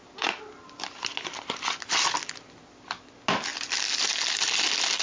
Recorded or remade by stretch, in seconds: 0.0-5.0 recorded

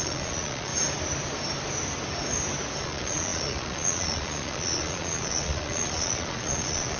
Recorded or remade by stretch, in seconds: 0.0-0.7 remade; 0.7-2.8 recorded; 2.8-7.0 remade

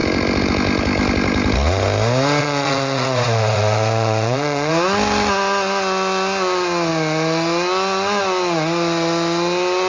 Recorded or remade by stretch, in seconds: 0.0-2.4 recorded; 2.4-4.7 remade; 4.7-9.9 recorded

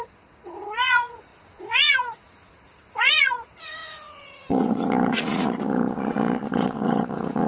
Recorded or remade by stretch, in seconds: 0.0-7.5 remade